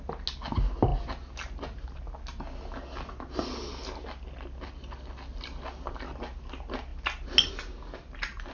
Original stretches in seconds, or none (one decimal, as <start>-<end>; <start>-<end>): 0.0-8.5